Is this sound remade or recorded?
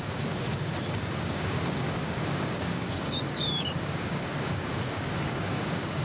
remade